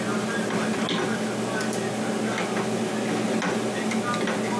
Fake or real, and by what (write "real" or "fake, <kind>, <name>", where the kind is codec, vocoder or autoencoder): real